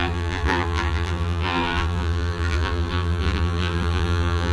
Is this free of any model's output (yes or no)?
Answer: no